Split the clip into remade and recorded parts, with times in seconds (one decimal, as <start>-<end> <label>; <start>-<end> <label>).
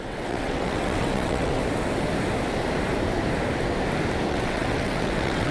0.0-1.6 remade; 1.6-4.3 recorded; 4.3-5.5 remade